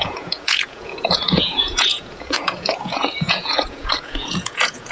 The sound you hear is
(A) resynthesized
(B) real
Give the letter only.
A